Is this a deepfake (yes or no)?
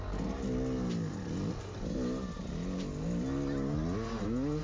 no